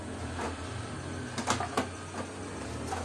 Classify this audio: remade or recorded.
recorded